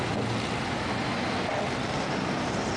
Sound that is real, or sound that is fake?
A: real